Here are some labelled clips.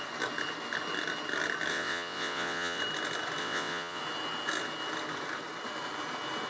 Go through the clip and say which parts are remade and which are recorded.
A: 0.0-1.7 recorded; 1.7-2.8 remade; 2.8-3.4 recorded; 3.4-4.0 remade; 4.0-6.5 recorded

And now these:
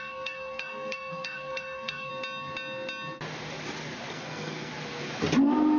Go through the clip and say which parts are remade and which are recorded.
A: 0.0-2.1 remade; 2.1-4.1 recorded; 4.1-4.7 remade; 4.7-5.8 recorded